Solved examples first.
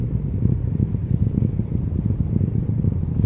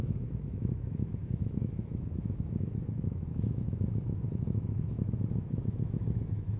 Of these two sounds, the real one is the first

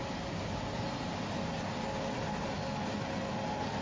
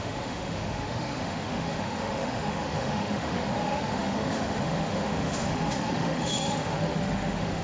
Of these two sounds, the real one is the first